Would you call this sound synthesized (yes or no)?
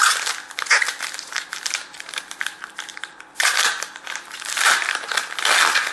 no